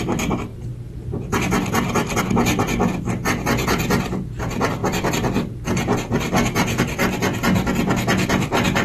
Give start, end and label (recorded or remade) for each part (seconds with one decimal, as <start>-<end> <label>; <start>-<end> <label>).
0.0-8.8 recorded